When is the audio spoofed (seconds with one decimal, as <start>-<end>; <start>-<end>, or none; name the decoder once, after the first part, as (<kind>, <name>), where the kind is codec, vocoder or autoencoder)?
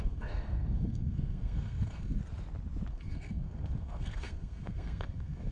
0.0-2.2 (codec, SNAC); 2.9-5.5